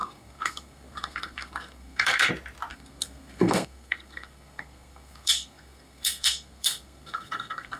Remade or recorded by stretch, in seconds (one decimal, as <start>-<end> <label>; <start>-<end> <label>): 0.0-2.3 remade; 2.3-2.7 recorded; 2.7-7.8 remade